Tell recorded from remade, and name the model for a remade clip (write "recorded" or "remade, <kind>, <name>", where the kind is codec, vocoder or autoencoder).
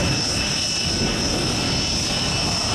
recorded